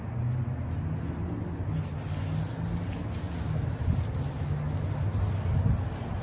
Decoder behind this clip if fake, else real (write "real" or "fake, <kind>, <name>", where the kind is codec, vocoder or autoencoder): real